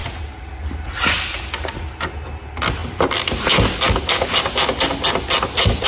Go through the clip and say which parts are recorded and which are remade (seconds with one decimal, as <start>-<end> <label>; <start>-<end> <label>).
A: 0.0-2.8 recorded; 2.8-4.0 remade; 4.0-5.9 recorded

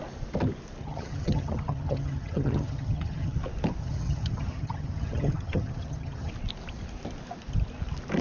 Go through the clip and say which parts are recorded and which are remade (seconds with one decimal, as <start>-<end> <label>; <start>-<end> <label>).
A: 0.0-0.8 recorded; 0.8-3.4 remade; 3.4-3.8 recorded; 3.8-6.3 remade; 6.3-8.2 recorded